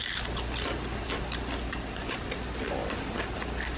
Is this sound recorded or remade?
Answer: recorded